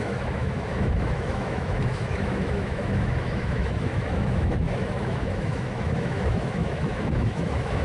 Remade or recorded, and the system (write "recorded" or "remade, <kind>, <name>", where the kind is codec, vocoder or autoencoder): remade, autoencoder, DAC-VAE